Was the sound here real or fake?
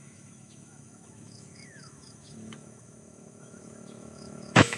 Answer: fake